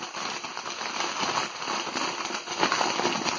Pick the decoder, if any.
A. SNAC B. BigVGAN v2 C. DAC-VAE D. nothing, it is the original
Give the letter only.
D